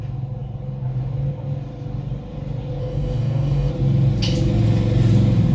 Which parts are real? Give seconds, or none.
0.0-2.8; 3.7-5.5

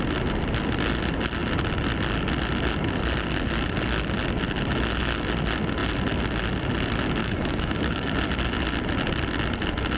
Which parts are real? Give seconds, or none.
0.0-7.2; 8.1-10.0

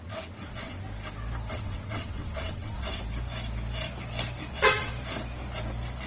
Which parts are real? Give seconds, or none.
0.7-1.5; 3.0-4.5; 4.9-6.1